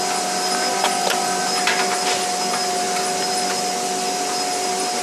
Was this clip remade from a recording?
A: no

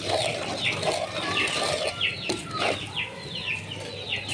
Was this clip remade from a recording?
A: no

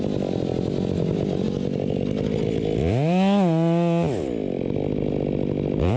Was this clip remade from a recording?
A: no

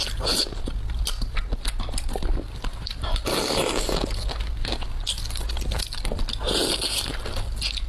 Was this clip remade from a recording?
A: no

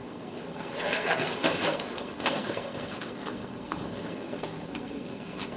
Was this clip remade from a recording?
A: yes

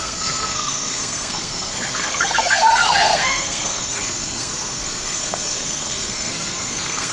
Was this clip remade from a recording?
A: yes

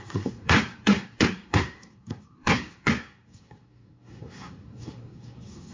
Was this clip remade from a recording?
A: yes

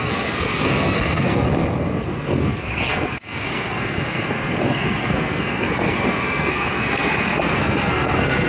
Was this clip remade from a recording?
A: yes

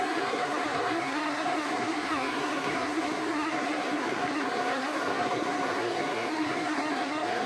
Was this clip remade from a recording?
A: yes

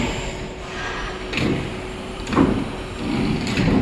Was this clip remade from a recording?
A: no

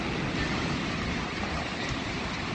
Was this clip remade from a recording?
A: no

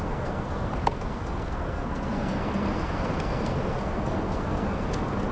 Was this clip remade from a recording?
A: yes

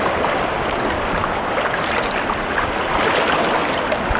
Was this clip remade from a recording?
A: no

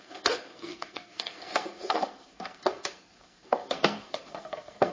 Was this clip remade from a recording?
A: yes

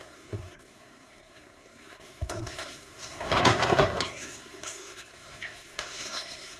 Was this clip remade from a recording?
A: yes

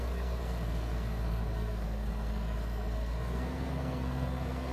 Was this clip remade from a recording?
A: yes